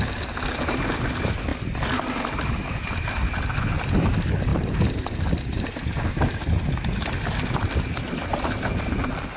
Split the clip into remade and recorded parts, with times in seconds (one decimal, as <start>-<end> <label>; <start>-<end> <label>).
0.0-9.4 recorded